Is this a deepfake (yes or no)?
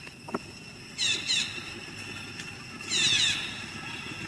no